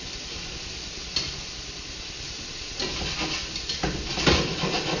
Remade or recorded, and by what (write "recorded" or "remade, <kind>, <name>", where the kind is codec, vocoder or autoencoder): recorded